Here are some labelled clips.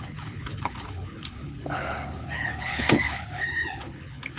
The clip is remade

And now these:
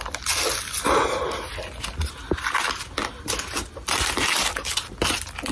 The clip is recorded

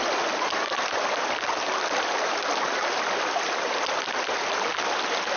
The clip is recorded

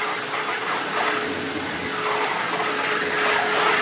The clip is recorded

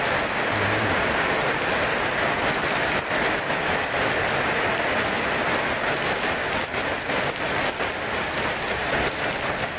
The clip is recorded